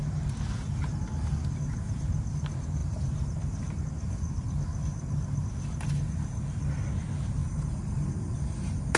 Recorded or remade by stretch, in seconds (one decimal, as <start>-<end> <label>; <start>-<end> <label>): 0.0-2.8 recorded; 2.8-3.8 remade; 3.8-7.4 recorded; 7.4-8.1 remade; 8.1-9.0 recorded